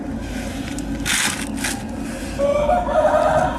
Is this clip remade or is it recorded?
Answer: recorded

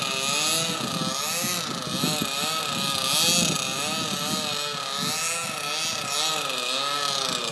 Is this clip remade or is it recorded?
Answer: recorded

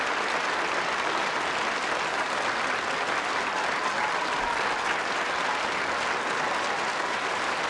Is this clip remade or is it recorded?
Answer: recorded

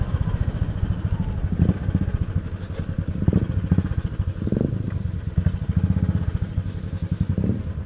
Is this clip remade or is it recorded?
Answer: recorded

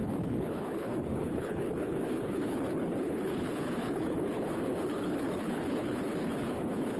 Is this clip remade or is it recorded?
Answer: remade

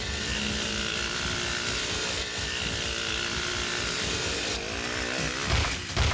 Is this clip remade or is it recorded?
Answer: recorded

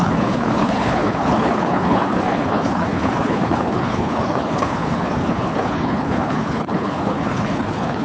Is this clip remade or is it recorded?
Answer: remade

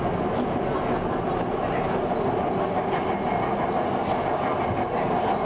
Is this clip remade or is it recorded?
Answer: recorded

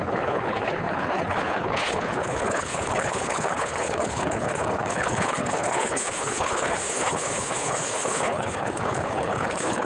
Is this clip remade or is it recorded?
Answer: remade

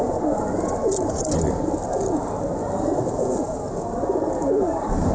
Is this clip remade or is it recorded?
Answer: recorded